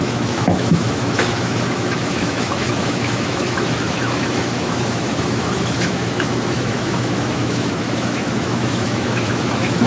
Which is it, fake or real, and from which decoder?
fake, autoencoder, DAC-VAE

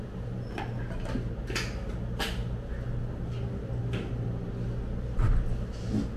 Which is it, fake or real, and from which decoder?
real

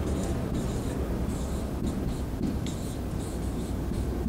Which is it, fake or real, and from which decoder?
real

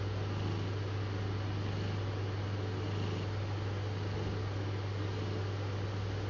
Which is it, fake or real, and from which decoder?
real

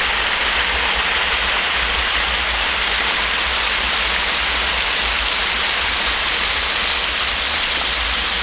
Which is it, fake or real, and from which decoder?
real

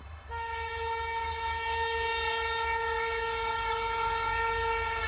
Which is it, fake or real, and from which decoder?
fake, autoencoder, DAC-VAE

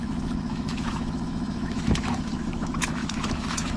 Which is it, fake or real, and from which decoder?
fake, autoencoder, DAC-VAE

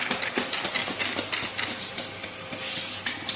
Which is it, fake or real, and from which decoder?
real